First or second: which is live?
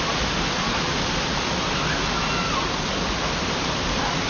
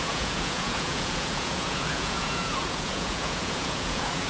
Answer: first